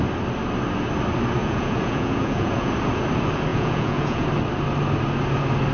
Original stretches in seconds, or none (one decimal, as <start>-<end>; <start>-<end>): 0.0-1.4; 2.7-3.5; 4.3-5.7